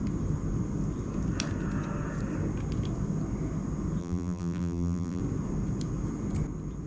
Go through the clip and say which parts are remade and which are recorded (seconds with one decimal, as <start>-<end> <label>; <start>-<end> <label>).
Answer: 0.0-4.0 recorded; 4.0-5.2 remade; 5.2-6.9 recorded